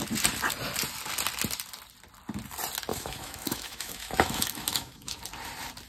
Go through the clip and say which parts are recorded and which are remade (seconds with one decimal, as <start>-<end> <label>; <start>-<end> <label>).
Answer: 0.0-2.9 recorded; 2.9-5.2 remade; 5.2-5.9 recorded

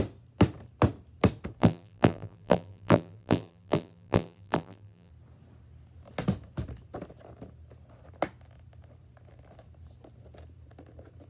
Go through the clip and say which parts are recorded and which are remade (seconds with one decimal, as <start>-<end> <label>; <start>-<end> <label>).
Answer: 0.0-1.6 recorded; 1.6-5.1 remade; 5.1-11.3 recorded